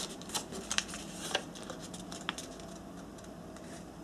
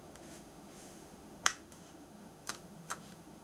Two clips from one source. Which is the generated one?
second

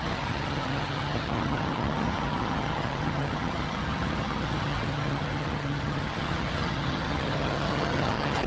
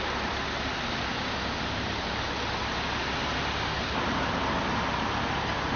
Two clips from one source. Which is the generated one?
first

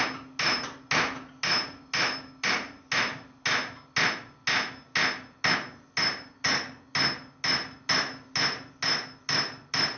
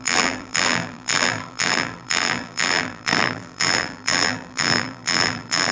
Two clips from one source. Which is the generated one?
second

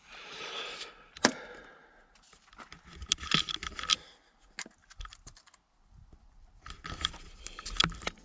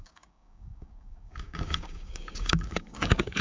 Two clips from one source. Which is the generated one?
second